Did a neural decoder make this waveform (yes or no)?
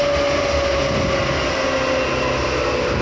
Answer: no